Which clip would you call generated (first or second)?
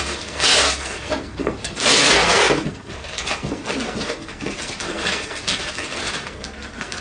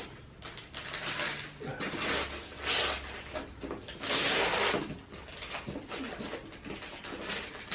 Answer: first